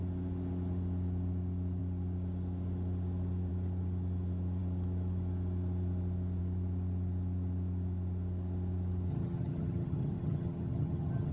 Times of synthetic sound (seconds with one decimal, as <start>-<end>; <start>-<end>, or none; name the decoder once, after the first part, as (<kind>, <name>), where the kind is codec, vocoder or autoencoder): 9.1-11.3 (vocoder, HiFi-GAN)